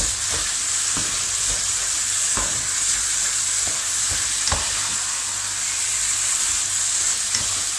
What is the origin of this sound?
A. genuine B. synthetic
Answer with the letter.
A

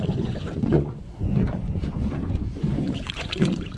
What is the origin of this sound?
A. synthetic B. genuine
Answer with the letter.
A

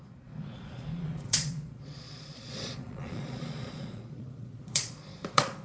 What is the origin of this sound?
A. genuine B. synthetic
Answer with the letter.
B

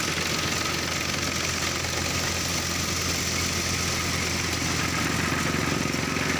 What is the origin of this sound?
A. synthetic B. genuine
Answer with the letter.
B